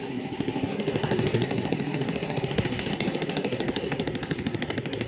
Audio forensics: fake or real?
fake